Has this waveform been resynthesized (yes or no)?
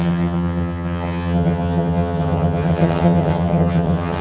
yes